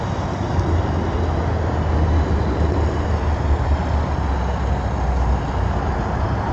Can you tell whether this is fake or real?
real